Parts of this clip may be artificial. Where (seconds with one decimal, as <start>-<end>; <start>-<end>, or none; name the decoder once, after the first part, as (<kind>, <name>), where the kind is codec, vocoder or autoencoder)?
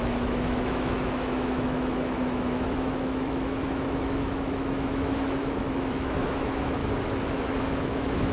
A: 0.0-6.8 (autoencoder, DAC-VAE); 7.3-8.3